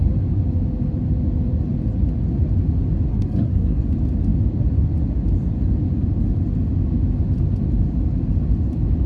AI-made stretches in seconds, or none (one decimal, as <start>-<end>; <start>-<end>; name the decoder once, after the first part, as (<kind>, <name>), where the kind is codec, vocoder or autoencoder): 3.1-3.8 (codec, SNAC)